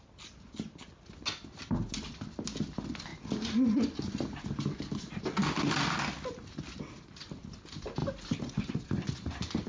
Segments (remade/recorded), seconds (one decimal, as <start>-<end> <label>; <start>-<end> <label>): 0.0-9.7 recorded